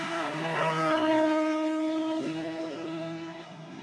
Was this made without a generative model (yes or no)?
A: no